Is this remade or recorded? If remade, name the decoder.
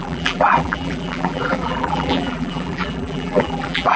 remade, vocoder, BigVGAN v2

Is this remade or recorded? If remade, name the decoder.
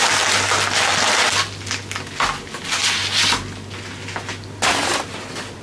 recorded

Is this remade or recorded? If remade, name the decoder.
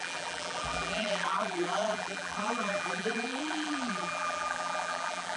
remade, vocoder, BigVGAN v2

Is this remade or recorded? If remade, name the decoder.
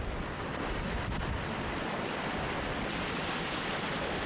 remade, vocoder, BigVGAN v2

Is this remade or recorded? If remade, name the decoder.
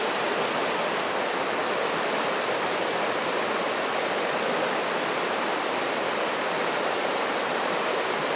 remade, vocoder, BigVGAN v2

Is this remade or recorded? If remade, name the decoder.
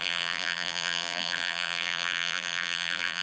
remade, vocoder, BigVGAN v2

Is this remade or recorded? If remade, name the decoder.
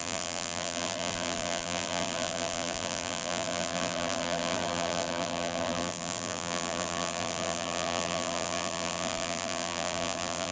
remade, vocoder, BigVGAN v2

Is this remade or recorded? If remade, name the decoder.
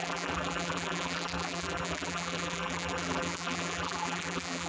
remade, vocoder, BigVGAN v2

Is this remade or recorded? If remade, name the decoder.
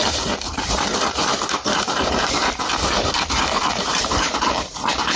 remade, vocoder, BigVGAN v2